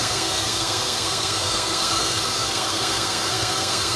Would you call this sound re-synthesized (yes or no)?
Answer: yes